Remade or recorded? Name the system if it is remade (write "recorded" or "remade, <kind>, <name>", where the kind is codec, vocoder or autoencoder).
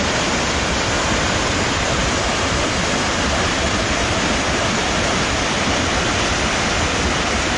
recorded